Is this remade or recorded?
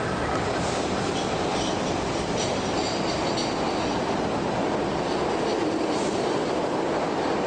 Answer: recorded